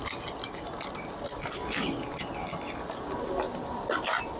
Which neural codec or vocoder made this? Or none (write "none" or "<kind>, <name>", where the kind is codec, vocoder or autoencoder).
none